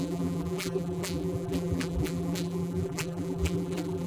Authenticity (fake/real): fake